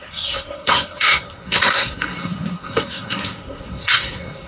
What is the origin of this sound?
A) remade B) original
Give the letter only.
A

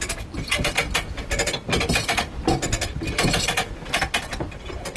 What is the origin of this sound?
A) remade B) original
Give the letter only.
B